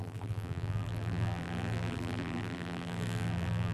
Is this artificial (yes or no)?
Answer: yes